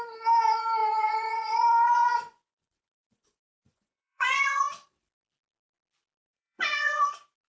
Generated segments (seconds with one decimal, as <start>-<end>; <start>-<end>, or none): 0.8-4.6; 6.3-7.1